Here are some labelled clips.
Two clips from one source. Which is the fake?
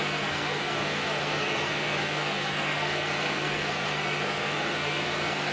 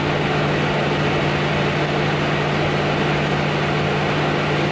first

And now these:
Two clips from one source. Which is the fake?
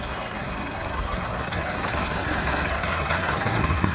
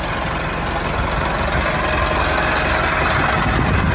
first